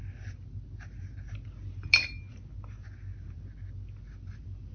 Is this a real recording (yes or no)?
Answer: yes